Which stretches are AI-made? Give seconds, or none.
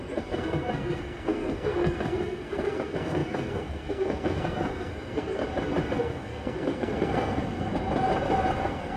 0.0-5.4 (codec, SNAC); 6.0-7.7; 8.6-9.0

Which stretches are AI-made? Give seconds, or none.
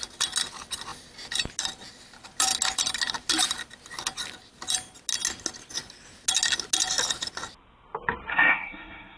8.3-9.2 (codec, SNAC)